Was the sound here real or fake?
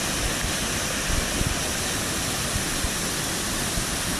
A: real